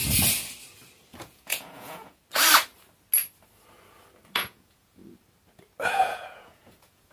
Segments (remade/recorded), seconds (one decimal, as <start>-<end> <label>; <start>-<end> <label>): 0.0-1.2 recorded; 1.2-2.2 remade; 2.2-4.3 recorded; 4.3-5.0 remade; 5.0-5.9 recorded; 5.9-7.1 remade